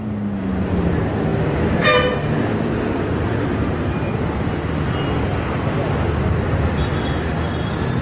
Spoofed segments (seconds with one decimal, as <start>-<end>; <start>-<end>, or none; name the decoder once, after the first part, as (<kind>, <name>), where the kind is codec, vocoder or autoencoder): none